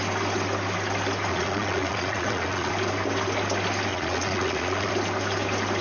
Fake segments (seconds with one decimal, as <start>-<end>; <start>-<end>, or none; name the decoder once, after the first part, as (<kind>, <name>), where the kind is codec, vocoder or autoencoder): 1.3-2.7 (vocoder, Vocos); 3.9-4.9